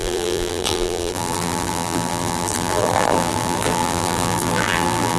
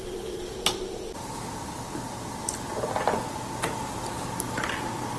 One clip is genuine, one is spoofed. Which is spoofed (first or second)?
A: first